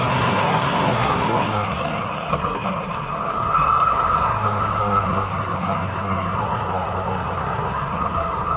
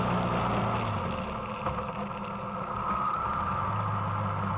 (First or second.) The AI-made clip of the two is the first